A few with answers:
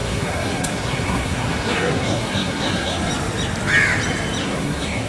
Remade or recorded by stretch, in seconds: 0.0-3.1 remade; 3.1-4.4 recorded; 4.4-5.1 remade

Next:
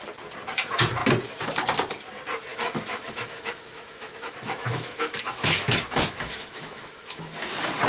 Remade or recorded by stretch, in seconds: 0.0-2.5 recorded; 2.5-7.2 remade; 7.2-7.9 recorded

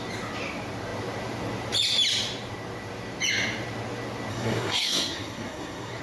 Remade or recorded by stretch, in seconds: 0.0-4.3 recorded; 4.3-6.0 remade

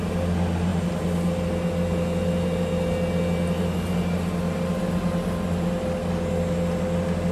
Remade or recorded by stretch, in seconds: 0.0-7.3 recorded